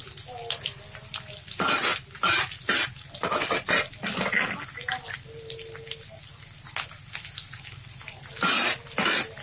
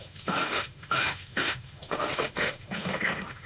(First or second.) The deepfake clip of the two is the second